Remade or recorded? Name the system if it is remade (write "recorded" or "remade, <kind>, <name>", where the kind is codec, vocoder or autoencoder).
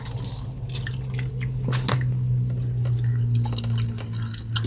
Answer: recorded